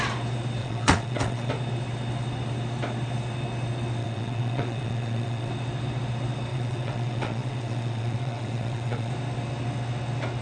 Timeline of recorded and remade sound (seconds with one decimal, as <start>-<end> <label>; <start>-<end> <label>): 0.0-0.6 recorded; 0.6-1.5 remade; 1.5-4.0 recorded; 4.0-5.5 remade; 5.5-6.5 recorded; 6.5-9.1 remade; 9.1-10.4 recorded